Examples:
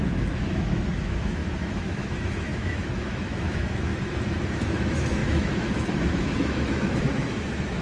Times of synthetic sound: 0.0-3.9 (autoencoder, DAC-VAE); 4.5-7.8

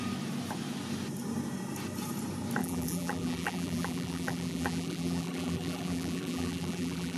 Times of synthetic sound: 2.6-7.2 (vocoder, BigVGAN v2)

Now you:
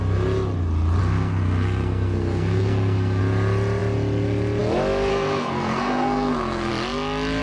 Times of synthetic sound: 1.0-3.2 (codec, SNAC); 5.1-6.7

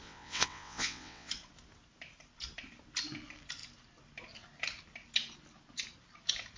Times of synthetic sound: 0.0-1.3 (vocoder, WaveNeXt)

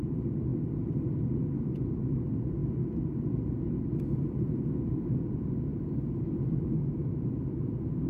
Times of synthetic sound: none